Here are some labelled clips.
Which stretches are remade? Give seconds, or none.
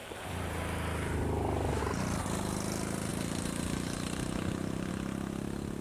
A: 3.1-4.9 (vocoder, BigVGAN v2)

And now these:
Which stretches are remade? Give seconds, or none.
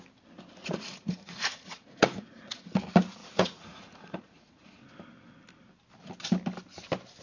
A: 0.6-2.8 (vocoder, Vocos); 3.2-4.8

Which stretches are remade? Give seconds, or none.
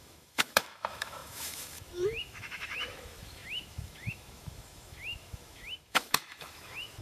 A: 0.0-7.0 (autoencoder, DAC-VAE)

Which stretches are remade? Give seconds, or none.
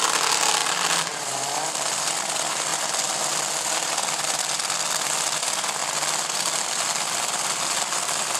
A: 0.0-2.7 (vocoder, BigVGAN v2); 3.3-5.8; 6.6-8.4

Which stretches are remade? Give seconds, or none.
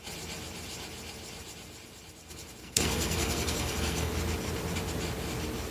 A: 2.6-4.1 (codec, SNAC)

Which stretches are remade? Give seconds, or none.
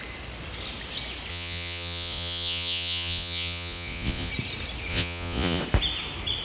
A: 1.3-4.3 (vocoder, Vocos); 4.9-5.6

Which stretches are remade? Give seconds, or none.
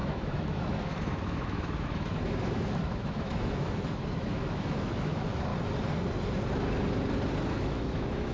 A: 0.0-5.5 (autoencoder, DAC-VAE); 7.6-8.3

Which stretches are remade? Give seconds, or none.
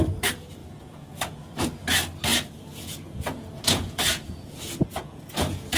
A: 0.6-1.5 (vocoder, Vocos); 2.3-5.8